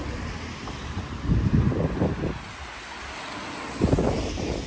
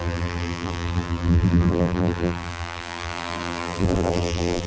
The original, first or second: first